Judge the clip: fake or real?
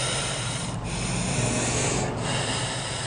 real